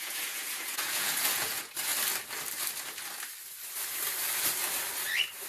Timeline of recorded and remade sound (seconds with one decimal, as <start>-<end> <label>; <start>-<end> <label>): 0.0-1.9 remade; 1.9-5.5 recorded